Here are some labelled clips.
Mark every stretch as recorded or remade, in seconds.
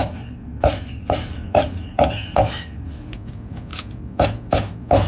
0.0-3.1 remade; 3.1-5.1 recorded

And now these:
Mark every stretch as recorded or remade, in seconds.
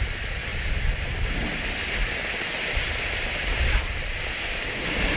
0.0-5.2 recorded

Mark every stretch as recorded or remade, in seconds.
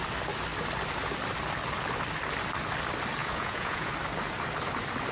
0.0-3.2 recorded; 3.2-3.9 remade; 3.9-5.1 recorded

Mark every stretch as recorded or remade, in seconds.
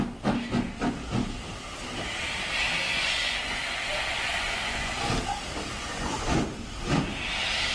0.0-2.9 recorded; 2.9-5.1 remade; 5.1-5.7 recorded; 5.7-6.4 remade; 6.4-7.7 recorded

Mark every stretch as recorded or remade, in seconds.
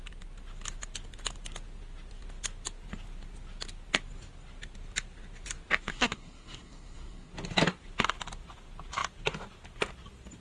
0.0-5.9 recorded; 5.9-7.3 remade; 7.3-10.4 recorded